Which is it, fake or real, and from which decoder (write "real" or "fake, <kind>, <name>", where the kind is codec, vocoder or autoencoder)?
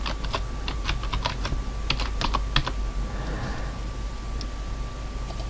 real